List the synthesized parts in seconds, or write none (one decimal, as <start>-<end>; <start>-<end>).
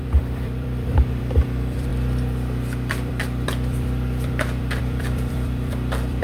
0.0-6.2